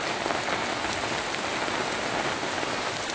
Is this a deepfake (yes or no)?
no